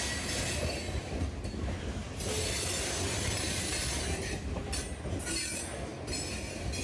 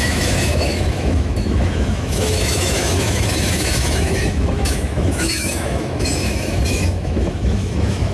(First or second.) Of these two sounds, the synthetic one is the second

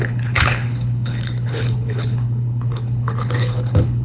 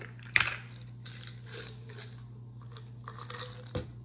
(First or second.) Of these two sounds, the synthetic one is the first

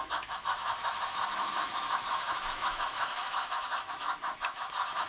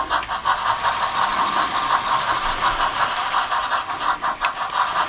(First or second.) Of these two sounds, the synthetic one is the first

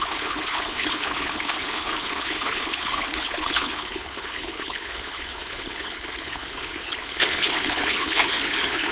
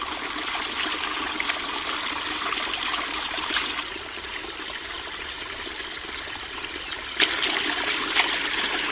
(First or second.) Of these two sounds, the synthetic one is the first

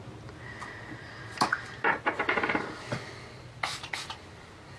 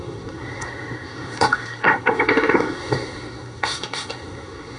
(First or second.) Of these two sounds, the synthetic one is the second